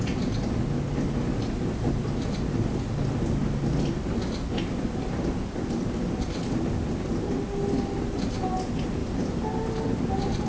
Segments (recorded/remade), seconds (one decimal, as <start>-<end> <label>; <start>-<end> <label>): 0.0-10.5 recorded